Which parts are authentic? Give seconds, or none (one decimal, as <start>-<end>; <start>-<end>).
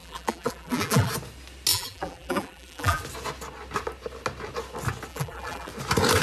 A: 1.1-1.7; 3.0-5.1; 5.7-6.2